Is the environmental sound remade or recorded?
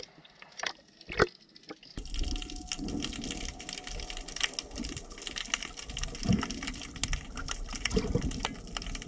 recorded